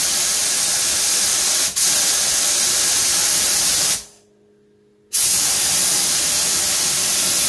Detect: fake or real real